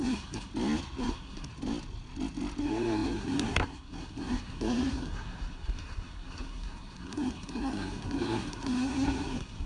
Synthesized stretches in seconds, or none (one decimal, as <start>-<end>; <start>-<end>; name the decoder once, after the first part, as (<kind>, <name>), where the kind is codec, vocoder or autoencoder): 0.0-0.5 (codec, SNAC); 1.0-1.5; 2.6-9.7